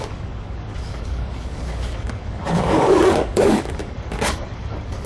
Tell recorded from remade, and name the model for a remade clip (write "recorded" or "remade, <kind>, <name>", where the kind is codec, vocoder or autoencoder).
remade, codec, DAC